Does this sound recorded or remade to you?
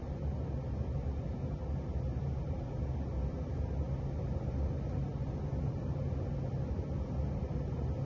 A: recorded